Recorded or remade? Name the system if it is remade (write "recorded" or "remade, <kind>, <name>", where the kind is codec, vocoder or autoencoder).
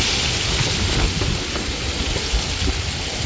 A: recorded